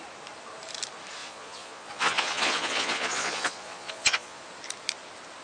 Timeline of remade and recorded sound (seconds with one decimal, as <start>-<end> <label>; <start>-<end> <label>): 0.0-1.2 recorded; 1.2-4.4 remade; 4.4-5.4 recorded